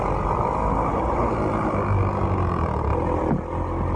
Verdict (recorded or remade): recorded